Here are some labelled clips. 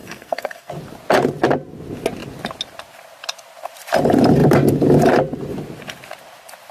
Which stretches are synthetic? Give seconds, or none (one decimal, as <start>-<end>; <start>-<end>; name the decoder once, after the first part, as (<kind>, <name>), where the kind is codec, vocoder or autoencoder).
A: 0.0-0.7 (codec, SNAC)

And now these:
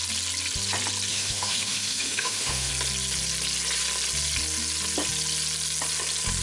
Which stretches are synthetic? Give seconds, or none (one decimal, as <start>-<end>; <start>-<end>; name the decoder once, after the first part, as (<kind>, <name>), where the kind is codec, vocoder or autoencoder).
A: 1.1-2.7 (autoencoder, DAC-VAE)

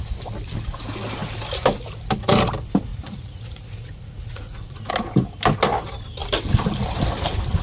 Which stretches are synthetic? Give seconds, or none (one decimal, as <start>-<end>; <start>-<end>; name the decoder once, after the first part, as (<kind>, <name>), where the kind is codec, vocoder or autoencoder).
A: 2.9-4.9 (vocoder, Vocos)

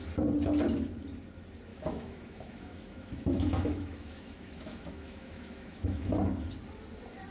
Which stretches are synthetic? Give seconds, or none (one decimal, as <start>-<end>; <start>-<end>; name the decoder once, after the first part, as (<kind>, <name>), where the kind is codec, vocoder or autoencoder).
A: 1.7-6.1 (autoencoder, DAC-VAE)

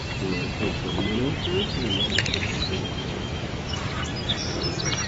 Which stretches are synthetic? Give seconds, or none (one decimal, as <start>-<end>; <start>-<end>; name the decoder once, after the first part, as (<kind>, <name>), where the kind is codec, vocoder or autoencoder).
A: 2.3-3.8 (autoencoder, DAC-VAE)

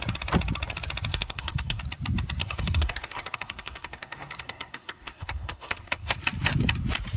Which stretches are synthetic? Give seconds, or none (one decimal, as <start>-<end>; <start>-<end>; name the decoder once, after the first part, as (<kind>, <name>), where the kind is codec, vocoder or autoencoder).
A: 1.1-1.8 (codec, SNAC); 2.4-6.2

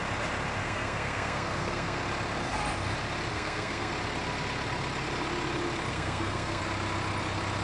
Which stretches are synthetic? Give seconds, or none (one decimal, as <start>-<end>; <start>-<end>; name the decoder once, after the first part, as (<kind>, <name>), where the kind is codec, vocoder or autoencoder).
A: 0.6-2.0 (codec, SNAC); 3.3-3.9; 5.9-6.6